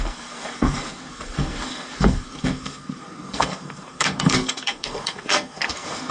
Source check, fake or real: fake